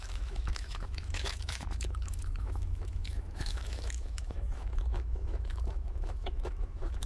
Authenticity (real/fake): fake